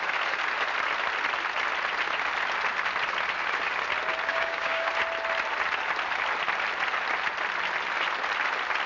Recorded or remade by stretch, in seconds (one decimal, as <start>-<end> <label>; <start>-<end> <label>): 0.0-4.3 recorded; 4.3-4.9 remade; 4.9-8.9 recorded